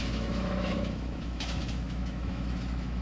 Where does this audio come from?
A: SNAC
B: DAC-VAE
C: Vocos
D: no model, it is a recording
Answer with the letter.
B